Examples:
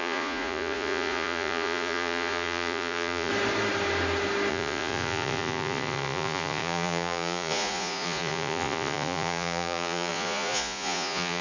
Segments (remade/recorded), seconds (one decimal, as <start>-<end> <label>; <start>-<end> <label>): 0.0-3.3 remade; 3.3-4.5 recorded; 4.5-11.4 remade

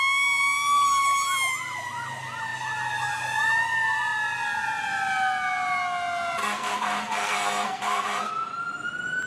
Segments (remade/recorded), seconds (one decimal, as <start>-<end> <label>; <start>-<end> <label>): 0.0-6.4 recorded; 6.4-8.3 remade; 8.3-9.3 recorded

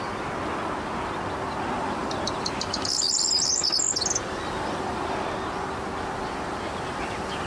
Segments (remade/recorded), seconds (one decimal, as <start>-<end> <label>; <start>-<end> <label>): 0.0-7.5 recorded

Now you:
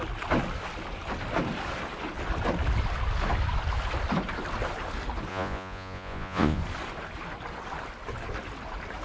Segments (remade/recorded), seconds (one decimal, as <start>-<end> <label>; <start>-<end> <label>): 0.0-5.3 recorded; 5.3-6.6 remade; 6.6-9.0 recorded

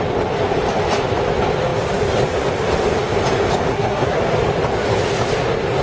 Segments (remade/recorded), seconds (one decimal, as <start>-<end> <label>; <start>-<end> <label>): 0.0-3.7 recorded; 3.7-4.2 remade; 4.2-5.8 recorded